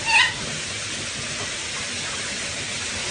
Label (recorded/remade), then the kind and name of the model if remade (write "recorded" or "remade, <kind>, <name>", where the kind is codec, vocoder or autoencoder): recorded